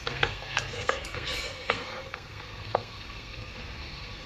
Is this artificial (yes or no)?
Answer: yes